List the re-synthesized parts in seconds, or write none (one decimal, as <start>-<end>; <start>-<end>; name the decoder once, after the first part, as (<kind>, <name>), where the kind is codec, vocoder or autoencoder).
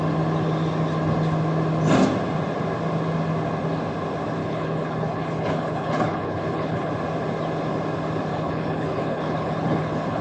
4.4-6.9 (codec, HILCodec); 8.3-10.2